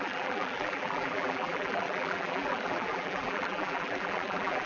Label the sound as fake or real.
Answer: fake